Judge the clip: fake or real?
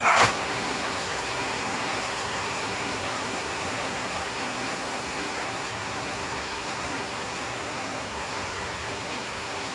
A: fake